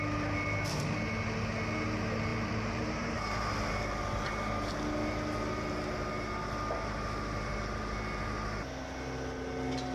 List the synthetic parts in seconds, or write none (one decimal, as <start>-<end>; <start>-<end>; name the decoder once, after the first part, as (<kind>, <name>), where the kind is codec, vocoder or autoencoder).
2.3-3.5 (vocoder, BigVGAN v2)

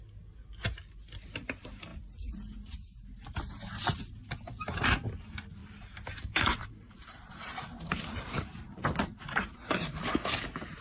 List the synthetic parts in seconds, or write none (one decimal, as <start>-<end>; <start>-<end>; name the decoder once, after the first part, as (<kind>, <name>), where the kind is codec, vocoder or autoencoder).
5.6-10.0 (vocoder, BigVGAN v2)

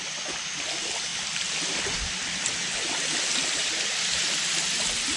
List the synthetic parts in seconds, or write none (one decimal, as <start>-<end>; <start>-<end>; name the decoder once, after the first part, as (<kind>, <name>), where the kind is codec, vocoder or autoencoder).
none

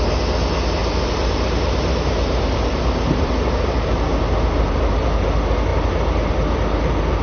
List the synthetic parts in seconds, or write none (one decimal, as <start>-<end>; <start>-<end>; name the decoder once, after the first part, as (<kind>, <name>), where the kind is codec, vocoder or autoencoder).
0.8-5.1 (vocoder, BigVGAN v2)

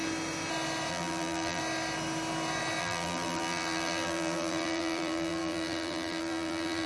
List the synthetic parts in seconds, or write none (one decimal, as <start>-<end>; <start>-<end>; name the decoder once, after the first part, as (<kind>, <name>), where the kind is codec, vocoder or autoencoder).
0.9-1.6 (vocoder, BigVGAN v2); 2.8-6.9